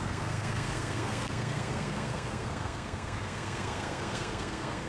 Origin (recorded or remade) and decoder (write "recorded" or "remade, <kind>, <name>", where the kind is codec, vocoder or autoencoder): remade, codec, SNAC